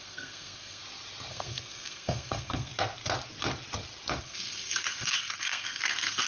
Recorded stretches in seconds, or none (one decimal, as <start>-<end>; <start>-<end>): 0.8-1.3; 2.7-4.2